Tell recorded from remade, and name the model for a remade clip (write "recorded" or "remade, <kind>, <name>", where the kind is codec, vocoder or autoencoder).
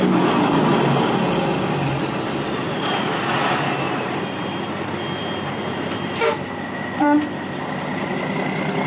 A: recorded